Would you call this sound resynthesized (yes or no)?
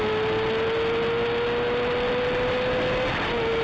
no